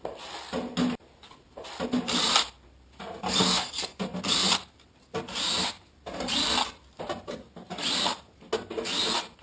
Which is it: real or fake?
real